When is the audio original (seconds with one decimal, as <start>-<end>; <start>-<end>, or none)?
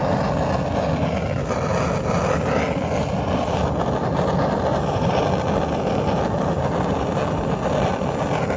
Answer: 0.0-8.6